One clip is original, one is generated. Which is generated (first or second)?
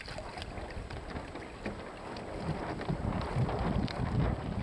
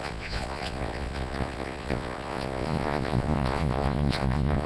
second